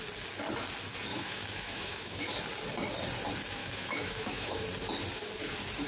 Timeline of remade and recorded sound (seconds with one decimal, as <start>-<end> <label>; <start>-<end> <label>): 0.0-1.1 recorded; 1.1-2.2 remade; 2.2-3.6 recorded; 3.6-4.6 remade; 4.6-5.9 recorded